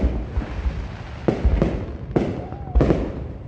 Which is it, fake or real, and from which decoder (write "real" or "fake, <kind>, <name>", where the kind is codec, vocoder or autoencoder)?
real